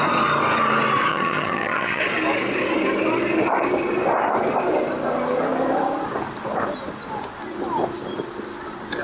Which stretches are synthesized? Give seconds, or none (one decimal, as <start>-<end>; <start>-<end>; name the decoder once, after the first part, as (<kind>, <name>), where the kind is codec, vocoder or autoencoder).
1.1-2.0 (vocoder, HiFi-GAN)

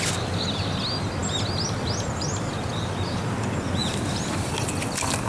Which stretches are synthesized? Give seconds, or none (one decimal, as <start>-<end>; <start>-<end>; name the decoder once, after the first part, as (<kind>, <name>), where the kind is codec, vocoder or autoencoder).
1.2-2.5 (vocoder, BigVGAN v2); 3.8-4.5

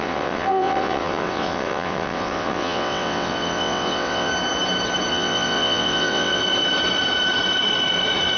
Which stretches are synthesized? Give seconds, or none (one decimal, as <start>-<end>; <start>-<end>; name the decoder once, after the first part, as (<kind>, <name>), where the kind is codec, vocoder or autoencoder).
0.0-4.3 (vocoder, WaveNeXt); 5.1-6.4

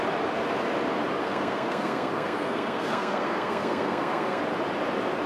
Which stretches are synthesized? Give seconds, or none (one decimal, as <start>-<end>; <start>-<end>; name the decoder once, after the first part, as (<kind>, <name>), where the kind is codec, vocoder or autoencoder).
1.2-4.4 (codec, SNAC)

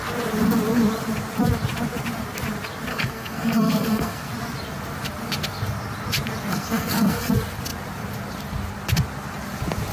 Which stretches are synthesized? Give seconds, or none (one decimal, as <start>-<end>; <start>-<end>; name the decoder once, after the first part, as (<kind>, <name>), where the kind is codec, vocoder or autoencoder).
2.9-4.3 (codec, SNAC); 6.5-7.3